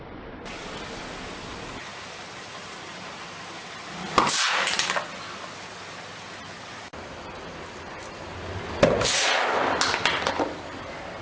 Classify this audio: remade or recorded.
recorded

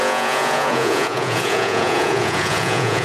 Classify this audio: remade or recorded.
remade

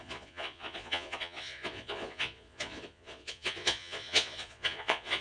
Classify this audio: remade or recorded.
remade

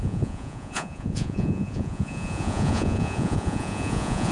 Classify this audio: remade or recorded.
remade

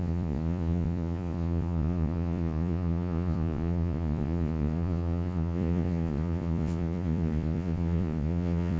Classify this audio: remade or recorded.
remade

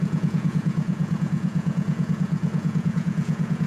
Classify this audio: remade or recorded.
remade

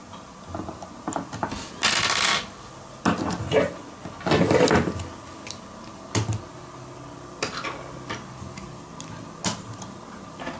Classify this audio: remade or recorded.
recorded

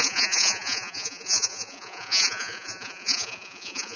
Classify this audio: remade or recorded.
remade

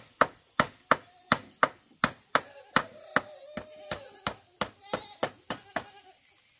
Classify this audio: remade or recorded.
recorded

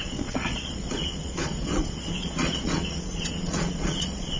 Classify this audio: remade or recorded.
remade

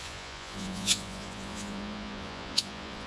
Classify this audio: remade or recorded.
remade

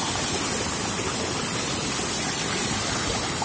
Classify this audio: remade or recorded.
recorded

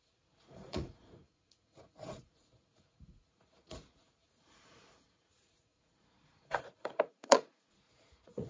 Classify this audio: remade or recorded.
remade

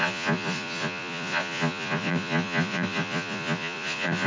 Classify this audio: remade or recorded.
remade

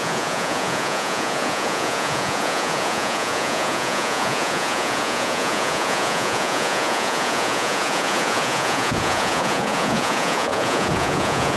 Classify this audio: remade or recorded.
remade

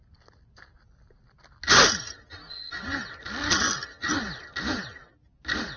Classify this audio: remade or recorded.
recorded